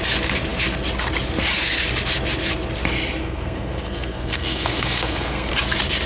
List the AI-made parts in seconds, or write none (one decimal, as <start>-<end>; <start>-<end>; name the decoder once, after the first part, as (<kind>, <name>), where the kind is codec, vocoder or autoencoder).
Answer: 3.2-5.5 (codec, SNAC)